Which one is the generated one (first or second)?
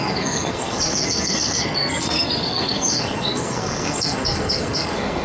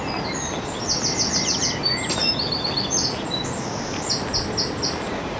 first